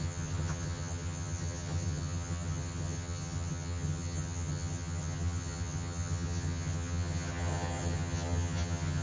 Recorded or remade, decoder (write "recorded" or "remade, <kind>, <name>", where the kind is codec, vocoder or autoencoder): remade, vocoder, HiFi-GAN